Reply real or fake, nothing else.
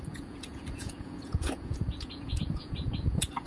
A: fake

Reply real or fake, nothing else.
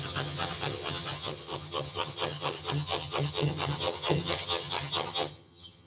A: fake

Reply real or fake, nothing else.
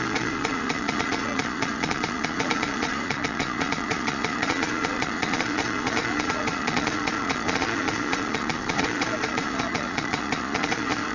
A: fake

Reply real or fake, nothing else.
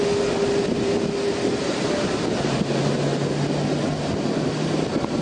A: real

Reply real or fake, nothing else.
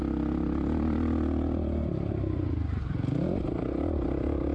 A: real